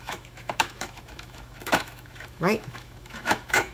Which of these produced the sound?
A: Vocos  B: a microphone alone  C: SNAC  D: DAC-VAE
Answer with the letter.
D